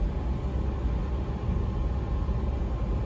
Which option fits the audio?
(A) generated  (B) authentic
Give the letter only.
B